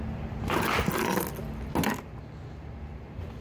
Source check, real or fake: real